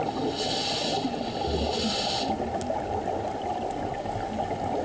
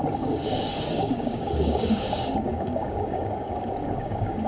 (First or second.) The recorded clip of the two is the first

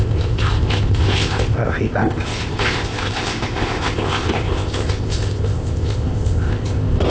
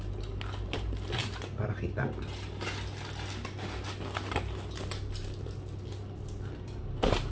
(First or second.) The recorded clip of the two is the second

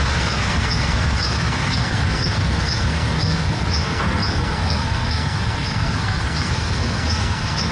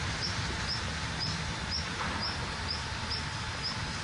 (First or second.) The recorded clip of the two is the second